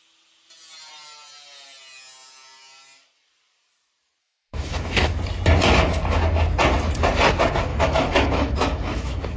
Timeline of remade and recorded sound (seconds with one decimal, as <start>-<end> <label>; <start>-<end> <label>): 0.0-4.2 recorded; 4.2-5.1 remade; 5.1-7.7 recorded; 7.7-9.4 remade